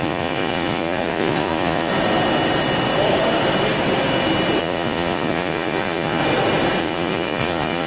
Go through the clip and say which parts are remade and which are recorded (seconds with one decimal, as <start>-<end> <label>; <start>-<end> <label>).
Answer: 0.0-1.9 remade; 1.9-4.6 recorded; 4.6-6.2 remade; 6.2-6.8 recorded; 6.8-7.9 remade